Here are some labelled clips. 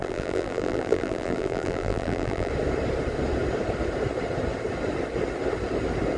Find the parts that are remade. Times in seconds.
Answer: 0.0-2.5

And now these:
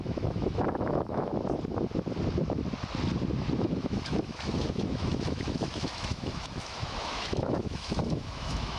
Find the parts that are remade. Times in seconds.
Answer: 0.0-1.3; 3.6-8.8

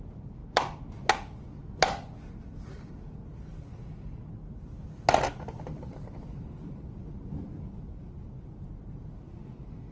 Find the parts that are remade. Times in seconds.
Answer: none

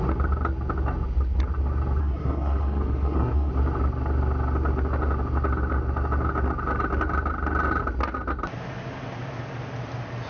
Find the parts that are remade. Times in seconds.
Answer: 2.0-3.5

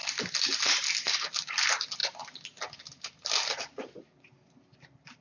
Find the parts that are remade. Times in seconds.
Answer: none

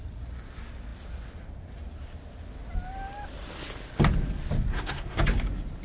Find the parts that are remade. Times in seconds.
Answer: 4.7-5.2

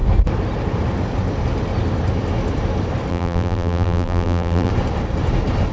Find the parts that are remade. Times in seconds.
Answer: 3.1-4.7

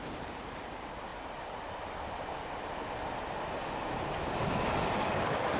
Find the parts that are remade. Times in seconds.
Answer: none